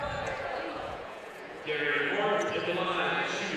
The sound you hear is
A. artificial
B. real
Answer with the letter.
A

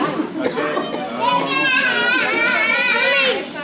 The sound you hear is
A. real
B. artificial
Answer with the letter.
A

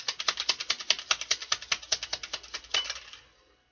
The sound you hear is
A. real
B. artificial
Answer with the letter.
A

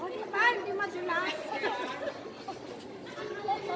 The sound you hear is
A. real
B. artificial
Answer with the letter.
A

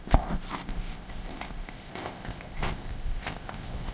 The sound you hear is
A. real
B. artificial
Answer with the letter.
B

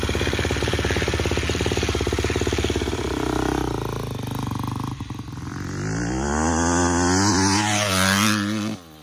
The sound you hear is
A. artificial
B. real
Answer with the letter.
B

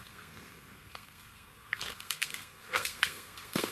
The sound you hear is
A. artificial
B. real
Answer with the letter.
A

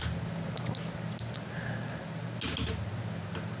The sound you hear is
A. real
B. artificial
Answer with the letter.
A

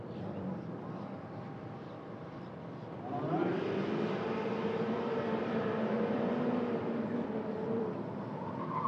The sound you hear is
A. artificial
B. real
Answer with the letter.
A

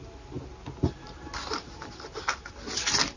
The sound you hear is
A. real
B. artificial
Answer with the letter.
A